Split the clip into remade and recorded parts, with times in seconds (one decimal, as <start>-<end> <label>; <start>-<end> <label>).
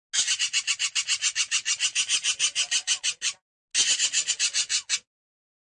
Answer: 0.0-5.6 recorded